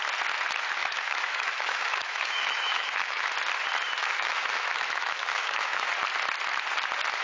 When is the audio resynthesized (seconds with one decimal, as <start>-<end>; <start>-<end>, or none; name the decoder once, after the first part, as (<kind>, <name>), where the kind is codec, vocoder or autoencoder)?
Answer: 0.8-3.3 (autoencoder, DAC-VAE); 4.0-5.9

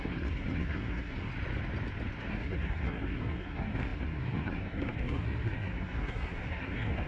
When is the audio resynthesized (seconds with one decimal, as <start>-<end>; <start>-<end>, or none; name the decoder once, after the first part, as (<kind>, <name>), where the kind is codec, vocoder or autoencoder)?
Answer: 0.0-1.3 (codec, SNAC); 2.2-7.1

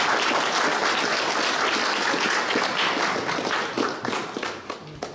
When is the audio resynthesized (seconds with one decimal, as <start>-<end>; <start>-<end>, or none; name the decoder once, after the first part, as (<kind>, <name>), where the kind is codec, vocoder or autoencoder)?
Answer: none

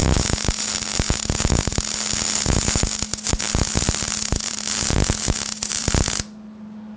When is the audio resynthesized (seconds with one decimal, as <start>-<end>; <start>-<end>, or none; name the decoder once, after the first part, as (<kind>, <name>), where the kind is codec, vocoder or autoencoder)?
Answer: 3.3-4.9 (vocoder, BigVGAN v2); 5.7-7.0

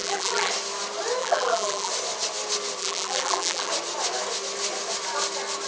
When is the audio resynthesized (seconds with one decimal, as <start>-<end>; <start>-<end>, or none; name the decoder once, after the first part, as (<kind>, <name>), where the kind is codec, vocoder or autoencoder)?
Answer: 0.0-0.5 (vocoder, BigVGAN v2); 1.2-1.9; 2.8-3.7